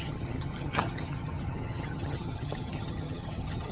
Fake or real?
fake